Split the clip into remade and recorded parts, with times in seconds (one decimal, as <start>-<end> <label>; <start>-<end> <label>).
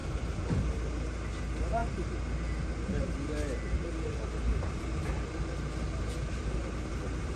0.0-7.4 recorded